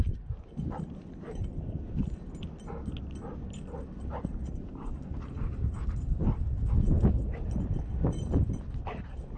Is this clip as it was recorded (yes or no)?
yes